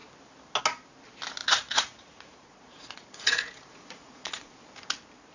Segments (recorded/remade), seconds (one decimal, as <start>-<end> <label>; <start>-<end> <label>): 0.0-1.4 recorded; 1.4-4.6 remade; 4.6-5.3 recorded